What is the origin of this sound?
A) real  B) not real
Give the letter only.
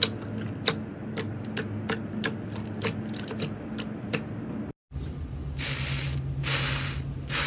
A